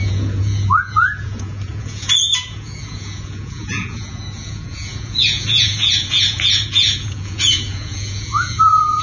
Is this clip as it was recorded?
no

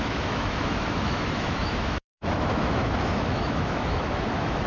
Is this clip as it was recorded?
no